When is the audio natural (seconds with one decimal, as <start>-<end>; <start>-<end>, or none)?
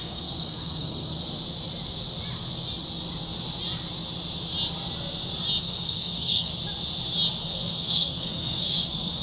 1.2-5.6; 6.5-7.4